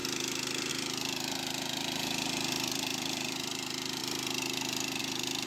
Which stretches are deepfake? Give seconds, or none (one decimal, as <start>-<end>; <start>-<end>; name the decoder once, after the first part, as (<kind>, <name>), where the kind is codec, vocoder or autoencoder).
2.9-3.5 (vocoder, BigVGAN v2)